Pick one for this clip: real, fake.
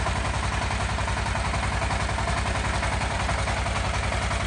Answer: real